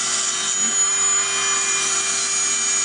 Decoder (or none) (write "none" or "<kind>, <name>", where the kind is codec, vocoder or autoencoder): none